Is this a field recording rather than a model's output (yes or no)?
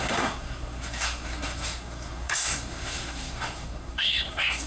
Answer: no